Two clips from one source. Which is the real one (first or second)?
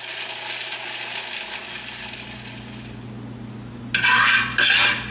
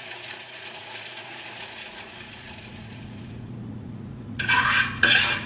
first